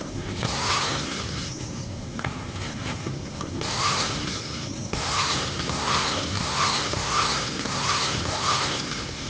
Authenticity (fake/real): fake